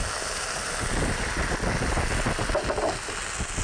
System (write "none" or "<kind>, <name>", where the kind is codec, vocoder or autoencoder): none